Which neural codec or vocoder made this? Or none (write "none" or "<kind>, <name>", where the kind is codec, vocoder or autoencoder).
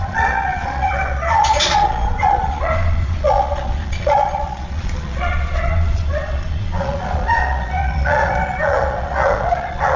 vocoder, Vocos